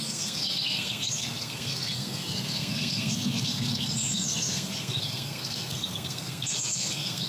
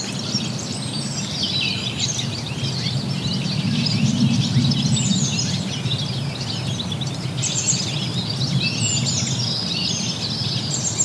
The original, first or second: second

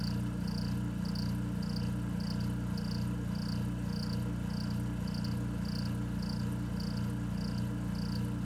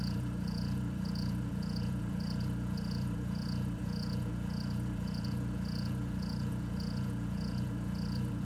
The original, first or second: first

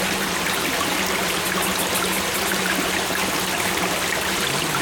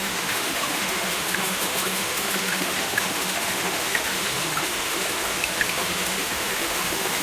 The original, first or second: first